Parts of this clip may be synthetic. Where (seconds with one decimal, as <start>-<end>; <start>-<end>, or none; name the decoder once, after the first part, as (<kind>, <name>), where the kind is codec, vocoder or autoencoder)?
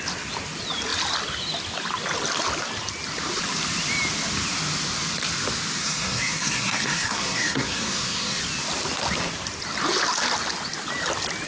5.8-8.4 (codec, SNAC)